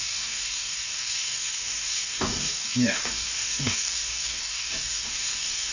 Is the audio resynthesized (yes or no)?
yes